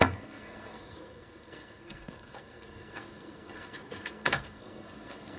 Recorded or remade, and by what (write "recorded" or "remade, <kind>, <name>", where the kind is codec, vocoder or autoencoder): remade, codec, SNAC